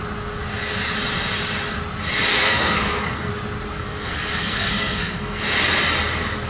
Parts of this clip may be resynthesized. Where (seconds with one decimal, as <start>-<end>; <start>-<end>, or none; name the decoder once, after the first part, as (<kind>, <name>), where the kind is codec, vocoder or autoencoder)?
2.3-3.3 (codec, SNAC); 3.7-5.4